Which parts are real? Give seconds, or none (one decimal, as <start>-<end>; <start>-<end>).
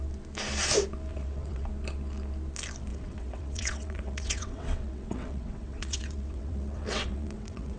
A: 0.0-1.1; 1.7-2.9